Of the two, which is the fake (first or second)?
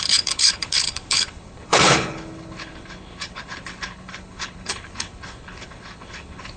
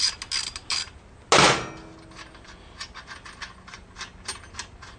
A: first